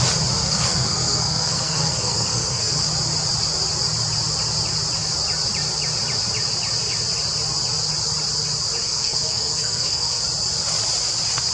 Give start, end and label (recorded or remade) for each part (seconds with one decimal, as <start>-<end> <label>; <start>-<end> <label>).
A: 0.0-0.4 recorded; 0.4-2.9 remade; 2.9-8.8 recorded; 8.8-10.2 remade; 10.2-11.5 recorded

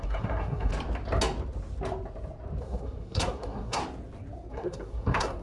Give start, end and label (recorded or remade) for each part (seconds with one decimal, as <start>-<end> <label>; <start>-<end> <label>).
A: 0.0-0.7 remade; 0.7-2.6 recorded; 2.6-3.8 remade; 3.8-4.5 recorded; 4.5-5.4 remade

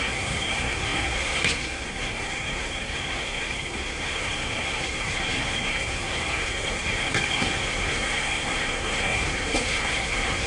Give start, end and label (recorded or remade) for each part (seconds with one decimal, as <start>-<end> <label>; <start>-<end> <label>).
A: 0.0-10.5 remade